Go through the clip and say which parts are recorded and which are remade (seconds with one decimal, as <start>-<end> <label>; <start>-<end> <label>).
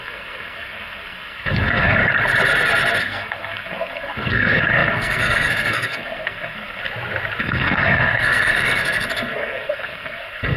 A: 0.0-2.0 remade; 2.0-3.0 recorded; 3.0-6.8 remade; 6.8-7.4 recorded; 7.4-10.6 remade